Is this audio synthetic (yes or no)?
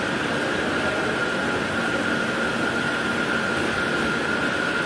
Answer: no